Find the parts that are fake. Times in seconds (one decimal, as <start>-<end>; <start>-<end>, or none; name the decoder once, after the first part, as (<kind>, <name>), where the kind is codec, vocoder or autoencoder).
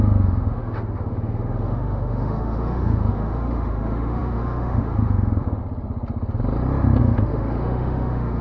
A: 0.0-5.6 (autoencoder, DAC-VAE); 7.0-8.4